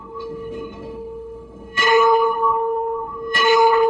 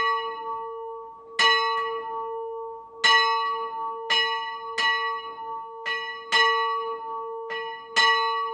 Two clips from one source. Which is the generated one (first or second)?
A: first